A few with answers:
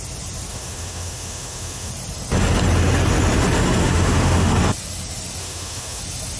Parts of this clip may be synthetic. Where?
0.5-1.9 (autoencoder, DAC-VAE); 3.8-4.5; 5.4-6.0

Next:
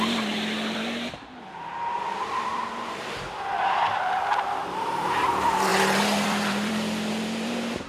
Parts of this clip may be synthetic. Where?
0.0-7.9 (vocoder, BigVGAN v2)